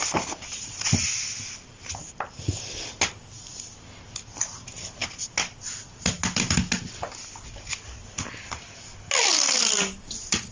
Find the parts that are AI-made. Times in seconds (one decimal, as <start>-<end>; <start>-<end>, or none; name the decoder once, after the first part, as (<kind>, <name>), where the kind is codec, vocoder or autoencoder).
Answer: none